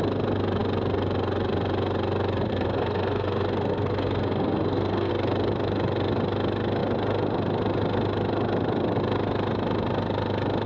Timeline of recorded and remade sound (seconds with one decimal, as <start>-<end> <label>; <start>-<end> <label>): 0.0-2.5 recorded; 2.5-5.1 remade; 5.1-10.7 recorded